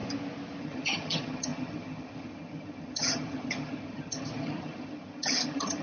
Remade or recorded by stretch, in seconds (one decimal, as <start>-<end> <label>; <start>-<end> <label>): 0.0-0.6 recorded; 0.6-5.8 remade